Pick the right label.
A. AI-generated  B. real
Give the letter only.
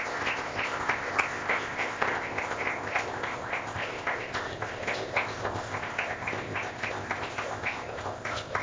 A